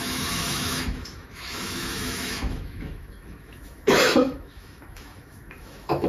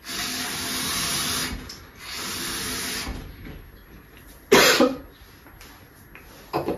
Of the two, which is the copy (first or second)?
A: first